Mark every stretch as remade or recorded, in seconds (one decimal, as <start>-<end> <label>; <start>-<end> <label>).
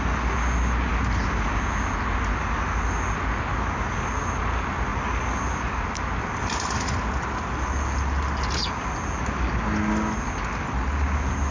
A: 0.0-11.5 recorded